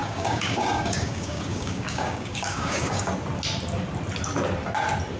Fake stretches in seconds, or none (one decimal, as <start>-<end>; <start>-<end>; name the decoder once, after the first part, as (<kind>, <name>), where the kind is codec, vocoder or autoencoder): 0.0-3.1 (codec, DAC)